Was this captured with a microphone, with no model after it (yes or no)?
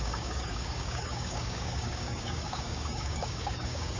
no